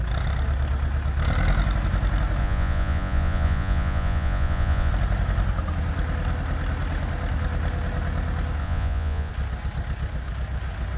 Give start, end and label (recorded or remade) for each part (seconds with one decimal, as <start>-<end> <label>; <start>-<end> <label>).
0.0-2.4 recorded; 2.4-4.9 remade; 4.9-8.6 recorded; 8.6-9.3 remade; 9.3-11.0 recorded